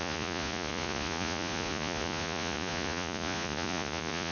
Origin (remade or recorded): remade